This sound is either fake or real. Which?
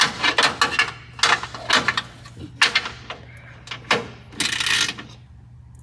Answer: real